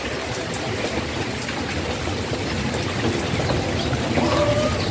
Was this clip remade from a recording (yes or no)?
no